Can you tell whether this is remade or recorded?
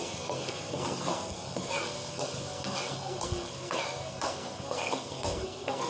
remade